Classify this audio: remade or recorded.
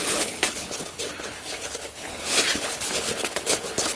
remade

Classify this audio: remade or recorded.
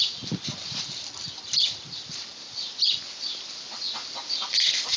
recorded